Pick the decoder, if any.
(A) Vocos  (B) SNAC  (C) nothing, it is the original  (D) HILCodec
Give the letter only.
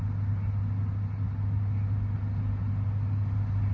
C